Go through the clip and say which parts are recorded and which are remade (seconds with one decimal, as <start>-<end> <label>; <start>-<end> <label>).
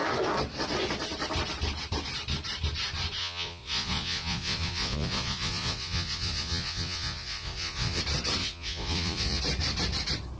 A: 0.0-3.2 recorded; 3.2-8.0 remade; 8.0-8.4 recorded; 8.4-9.4 remade; 9.4-10.4 recorded